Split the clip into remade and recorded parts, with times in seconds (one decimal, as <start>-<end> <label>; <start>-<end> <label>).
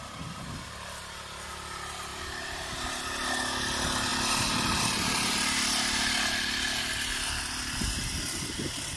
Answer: 0.0-2.1 recorded; 2.1-2.9 remade; 2.9-9.0 recorded